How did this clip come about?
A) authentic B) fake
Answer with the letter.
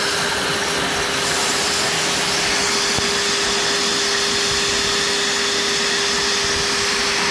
A